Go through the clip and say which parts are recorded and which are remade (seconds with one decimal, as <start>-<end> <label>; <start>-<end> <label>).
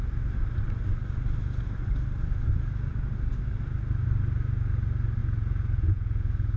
0.0-5.2 recorded; 5.2-6.6 remade